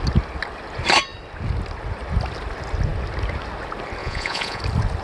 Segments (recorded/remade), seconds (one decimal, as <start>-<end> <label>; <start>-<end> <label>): 0.0-4.0 recorded; 4.0-4.6 remade; 4.6-5.0 recorded